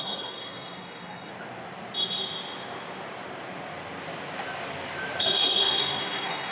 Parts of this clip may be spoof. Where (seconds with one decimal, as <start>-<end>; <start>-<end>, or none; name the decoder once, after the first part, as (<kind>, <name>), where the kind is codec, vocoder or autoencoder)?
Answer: 0.0-1.3 (codec, SNAC); 5.2-6.5